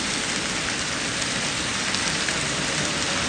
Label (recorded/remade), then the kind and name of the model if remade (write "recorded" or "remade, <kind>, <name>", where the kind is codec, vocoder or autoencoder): remade, vocoder, BigVGAN v2